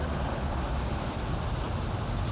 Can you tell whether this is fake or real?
real